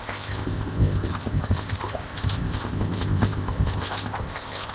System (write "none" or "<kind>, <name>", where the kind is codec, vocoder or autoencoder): codec, ZipCodec